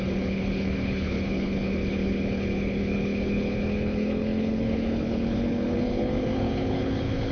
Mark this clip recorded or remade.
remade